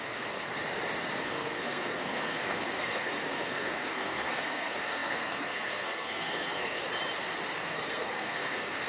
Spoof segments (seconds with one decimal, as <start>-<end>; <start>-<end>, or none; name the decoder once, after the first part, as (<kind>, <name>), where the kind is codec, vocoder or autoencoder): 0.0-0.5 (codec, SNAC); 1.2-6.8; 7.6-8.9